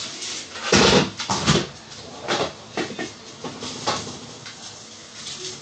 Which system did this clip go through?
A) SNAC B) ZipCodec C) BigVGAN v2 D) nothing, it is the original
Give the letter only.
D